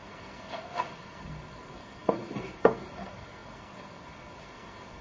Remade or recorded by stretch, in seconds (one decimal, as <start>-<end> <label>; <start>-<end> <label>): 0.0-5.0 remade